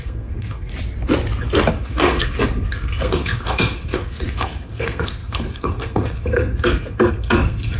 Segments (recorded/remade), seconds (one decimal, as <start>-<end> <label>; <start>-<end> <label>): 0.0-0.7 remade; 0.7-1.7 recorded; 1.7-7.8 remade